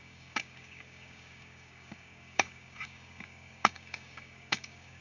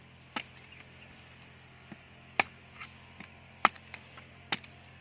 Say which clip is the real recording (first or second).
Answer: second